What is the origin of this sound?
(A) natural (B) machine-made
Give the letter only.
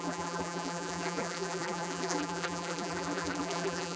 B